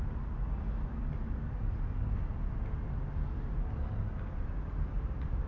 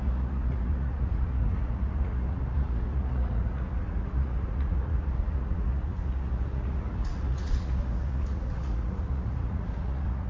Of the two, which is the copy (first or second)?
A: second